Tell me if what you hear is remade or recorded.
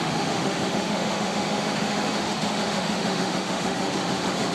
remade